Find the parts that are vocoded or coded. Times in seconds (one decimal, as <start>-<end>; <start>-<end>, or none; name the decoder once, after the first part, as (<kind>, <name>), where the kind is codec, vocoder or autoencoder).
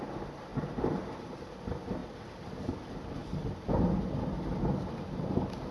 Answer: 0.5-1.4 (vocoder, BigVGAN v2); 3.2-4.7